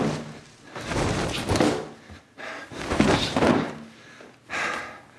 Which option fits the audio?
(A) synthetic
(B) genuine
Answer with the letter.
B